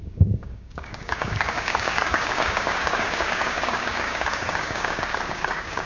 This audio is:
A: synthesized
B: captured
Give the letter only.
A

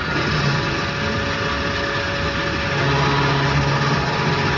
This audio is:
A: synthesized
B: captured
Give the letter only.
B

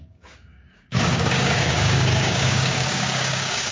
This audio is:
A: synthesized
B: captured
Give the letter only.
A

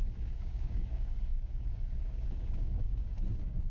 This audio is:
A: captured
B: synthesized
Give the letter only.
B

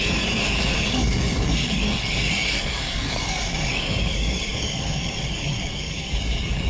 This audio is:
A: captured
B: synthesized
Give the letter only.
B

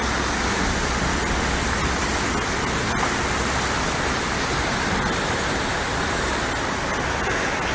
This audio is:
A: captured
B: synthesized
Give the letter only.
A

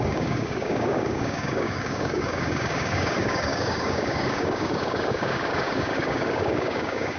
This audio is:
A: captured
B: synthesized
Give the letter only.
B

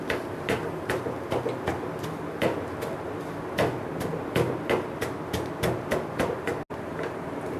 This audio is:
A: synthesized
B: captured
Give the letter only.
B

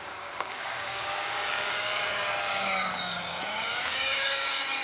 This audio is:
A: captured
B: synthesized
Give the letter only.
B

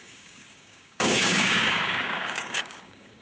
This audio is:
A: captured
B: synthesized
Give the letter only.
B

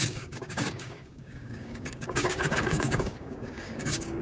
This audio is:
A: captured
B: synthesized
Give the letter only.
B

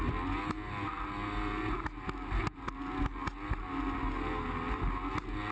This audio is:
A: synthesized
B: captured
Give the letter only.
B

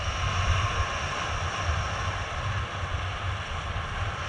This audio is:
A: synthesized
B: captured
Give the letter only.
B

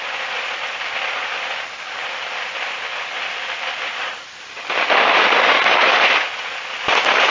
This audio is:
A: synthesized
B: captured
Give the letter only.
B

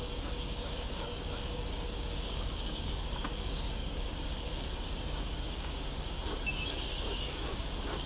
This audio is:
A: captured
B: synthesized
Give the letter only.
B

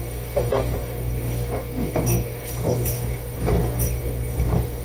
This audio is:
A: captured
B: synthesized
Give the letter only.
B